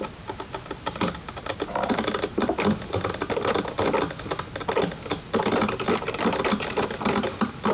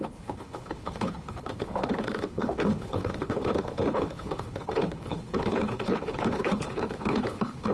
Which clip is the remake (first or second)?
second